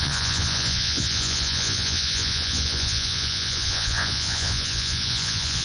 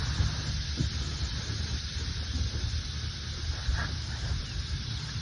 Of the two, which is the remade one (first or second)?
first